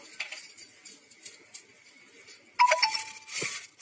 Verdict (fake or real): real